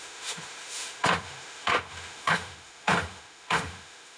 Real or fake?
fake